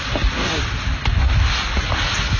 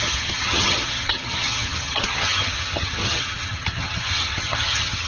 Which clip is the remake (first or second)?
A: second